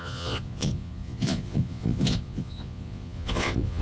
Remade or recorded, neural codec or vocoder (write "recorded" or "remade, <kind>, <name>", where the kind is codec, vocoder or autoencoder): remade, vocoder, Vocos